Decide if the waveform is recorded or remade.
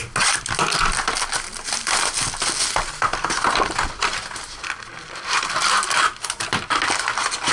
recorded